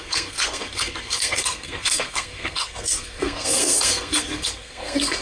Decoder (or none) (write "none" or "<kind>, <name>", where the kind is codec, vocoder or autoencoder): codec, SNAC